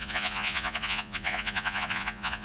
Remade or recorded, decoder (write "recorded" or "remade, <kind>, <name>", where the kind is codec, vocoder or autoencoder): remade, vocoder, Vocos